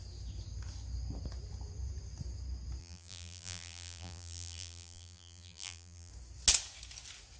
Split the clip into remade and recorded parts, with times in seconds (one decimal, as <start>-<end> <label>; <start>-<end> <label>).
0.0-2.8 recorded; 2.8-6.1 remade; 6.1-7.4 recorded